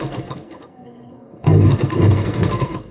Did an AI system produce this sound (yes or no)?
yes